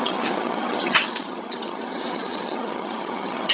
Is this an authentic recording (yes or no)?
no